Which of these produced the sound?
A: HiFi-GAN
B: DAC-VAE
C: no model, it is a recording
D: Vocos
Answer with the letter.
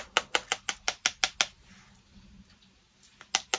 C